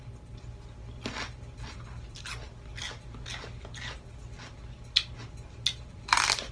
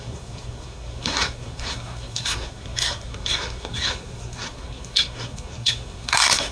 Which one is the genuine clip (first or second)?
first